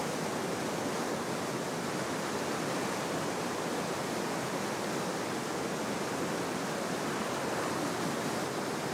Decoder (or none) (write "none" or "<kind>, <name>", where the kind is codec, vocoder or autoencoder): none